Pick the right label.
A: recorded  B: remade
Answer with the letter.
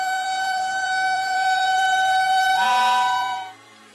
B